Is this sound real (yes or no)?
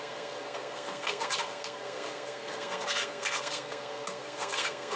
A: no